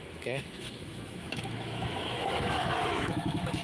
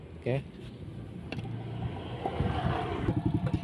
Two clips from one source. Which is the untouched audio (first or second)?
second